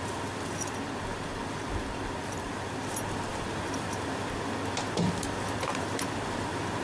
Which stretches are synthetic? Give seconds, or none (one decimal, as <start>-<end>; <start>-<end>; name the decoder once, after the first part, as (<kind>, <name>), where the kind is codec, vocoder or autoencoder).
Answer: 1.1-2.4 (vocoder, BigVGAN v2); 3.3-6.8